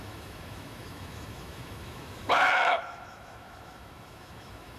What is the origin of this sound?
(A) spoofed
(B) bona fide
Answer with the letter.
A